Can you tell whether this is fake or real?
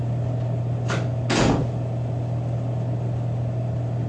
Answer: real